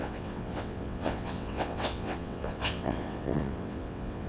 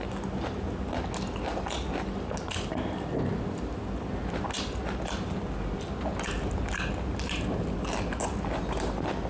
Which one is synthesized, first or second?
first